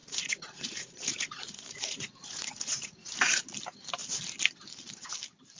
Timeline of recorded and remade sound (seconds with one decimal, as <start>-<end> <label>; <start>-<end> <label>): 0.0-3.4 remade; 3.4-5.6 recorded